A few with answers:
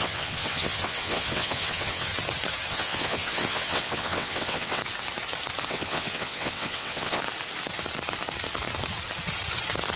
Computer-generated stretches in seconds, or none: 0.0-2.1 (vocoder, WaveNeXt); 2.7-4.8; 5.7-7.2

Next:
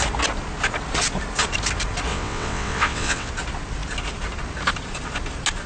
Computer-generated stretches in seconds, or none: 2.1-3.3 (vocoder, WaveNeXt)

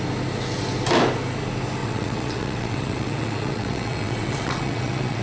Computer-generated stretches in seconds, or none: 1.8-5.2 (vocoder, WaveNeXt)

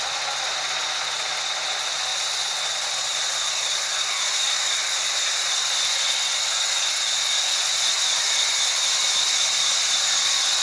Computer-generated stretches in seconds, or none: none

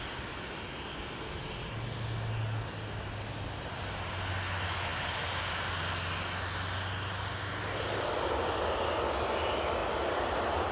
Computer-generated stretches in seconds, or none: none

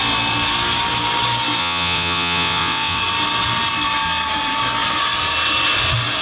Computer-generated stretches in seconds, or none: 1.6-3.0 (vocoder, WaveNeXt)

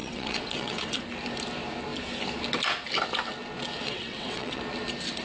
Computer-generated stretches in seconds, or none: 0.0-1.0 (vocoder, WaveNeXt); 3.8-4.6